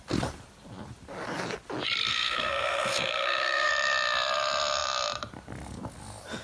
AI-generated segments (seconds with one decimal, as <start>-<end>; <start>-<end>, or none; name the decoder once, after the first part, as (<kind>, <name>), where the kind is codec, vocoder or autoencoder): 2.1-3.7 (codec, SNAC)